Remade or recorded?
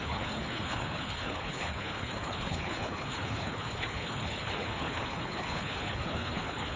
remade